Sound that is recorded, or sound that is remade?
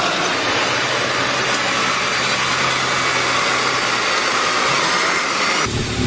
recorded